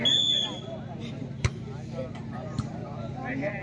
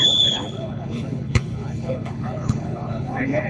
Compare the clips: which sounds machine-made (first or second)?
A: second